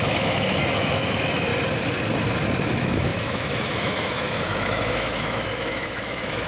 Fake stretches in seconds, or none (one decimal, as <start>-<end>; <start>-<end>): 0.0-1.5; 2.6-6.5